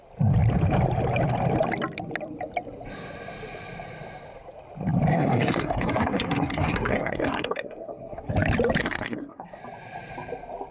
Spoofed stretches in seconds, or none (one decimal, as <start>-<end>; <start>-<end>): 5.1-8.3; 8.8-9.6